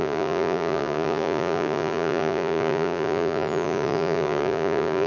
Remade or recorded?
remade